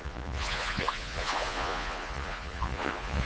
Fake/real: fake